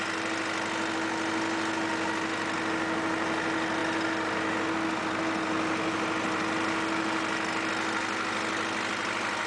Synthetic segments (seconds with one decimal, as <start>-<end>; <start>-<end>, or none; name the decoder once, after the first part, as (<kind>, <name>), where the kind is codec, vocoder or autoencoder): none